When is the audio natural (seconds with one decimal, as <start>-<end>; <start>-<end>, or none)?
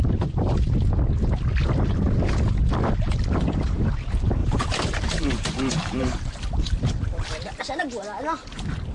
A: 0.0-4.4; 6.3-8.9